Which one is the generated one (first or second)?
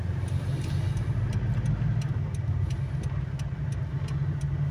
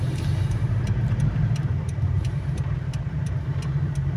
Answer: second